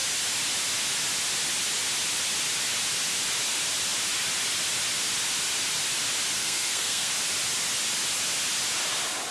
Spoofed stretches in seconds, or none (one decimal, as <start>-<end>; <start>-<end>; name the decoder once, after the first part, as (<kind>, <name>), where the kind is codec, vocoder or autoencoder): 6.4-7.1 (codec, SNAC)